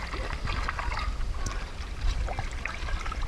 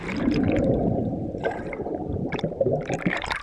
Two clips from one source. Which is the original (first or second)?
first